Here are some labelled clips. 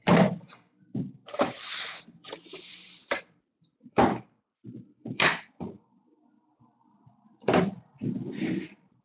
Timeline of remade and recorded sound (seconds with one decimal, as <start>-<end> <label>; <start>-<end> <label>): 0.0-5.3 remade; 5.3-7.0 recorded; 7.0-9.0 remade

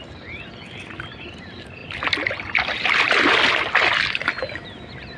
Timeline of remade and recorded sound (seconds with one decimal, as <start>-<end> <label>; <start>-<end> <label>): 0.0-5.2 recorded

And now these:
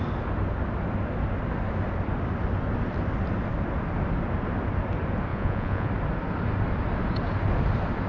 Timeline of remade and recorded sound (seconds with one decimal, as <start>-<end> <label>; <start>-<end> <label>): 0.0-5.3 recorded; 5.3-5.9 remade; 5.9-8.1 recorded

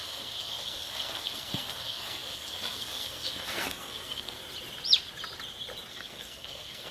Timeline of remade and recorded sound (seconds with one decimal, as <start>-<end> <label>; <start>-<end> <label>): 0.0-4.4 remade; 4.4-5.9 recorded; 5.9-6.9 remade